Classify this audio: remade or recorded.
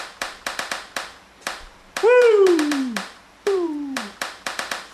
remade